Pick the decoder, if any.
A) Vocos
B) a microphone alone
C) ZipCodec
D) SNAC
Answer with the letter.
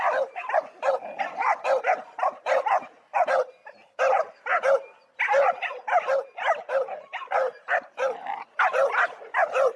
B